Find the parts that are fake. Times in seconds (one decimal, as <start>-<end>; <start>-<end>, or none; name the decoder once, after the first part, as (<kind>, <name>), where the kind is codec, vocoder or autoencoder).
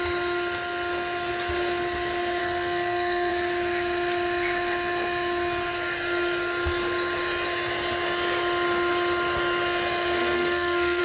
2.4-3.3 (codec, SNAC); 10.2-11.0